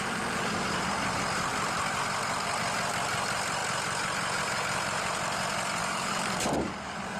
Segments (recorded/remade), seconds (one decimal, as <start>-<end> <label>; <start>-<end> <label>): 0.0-5.8 recorded; 5.8-7.2 remade